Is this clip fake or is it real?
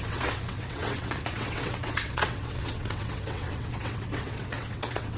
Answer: fake